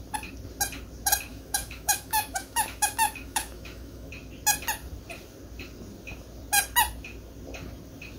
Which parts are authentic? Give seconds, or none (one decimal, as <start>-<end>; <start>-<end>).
0.0-1.3; 4.1-8.2